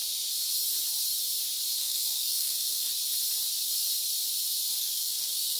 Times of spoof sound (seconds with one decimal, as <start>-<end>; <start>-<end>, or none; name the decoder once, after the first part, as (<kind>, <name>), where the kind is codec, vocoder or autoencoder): 1.8-2.9 (codec, SNAC); 4.8-5.6